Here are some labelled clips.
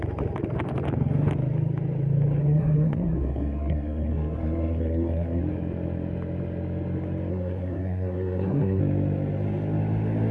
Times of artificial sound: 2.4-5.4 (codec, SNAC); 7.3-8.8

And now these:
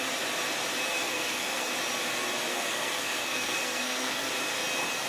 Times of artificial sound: 0.9-1.7 (codec, SNAC); 2.5-4.3